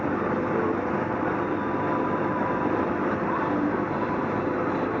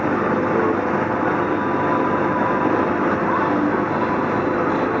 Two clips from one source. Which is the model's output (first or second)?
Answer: first